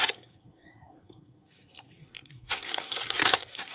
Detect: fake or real fake